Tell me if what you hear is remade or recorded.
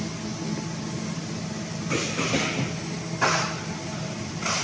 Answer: recorded